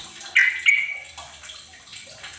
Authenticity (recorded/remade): recorded